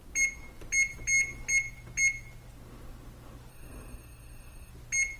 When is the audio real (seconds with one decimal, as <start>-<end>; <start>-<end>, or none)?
0.0-3.5; 4.7-5.2

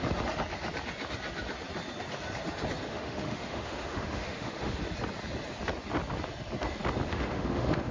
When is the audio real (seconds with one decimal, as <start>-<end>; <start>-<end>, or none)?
0.0-2.8; 4.8-7.1

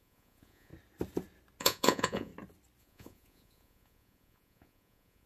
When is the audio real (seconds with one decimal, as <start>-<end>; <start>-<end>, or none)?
0.7-1.6; 2.3-2.8

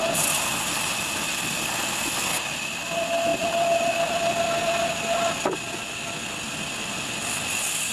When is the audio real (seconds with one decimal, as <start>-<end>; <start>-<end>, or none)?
0.0-7.9

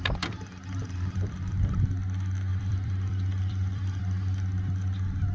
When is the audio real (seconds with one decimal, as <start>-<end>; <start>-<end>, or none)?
0.0-0.8; 1.5-2.5; 4.0-5.3

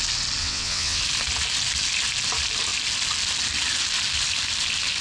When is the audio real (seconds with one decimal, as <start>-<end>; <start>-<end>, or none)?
0.0-0.4; 1.0-5.0

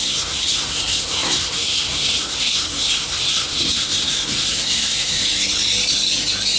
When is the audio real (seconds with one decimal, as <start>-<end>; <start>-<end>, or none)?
5.2-6.6